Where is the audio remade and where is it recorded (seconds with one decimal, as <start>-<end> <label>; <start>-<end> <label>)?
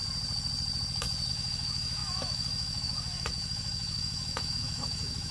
0.0-1.3 recorded; 1.3-5.3 remade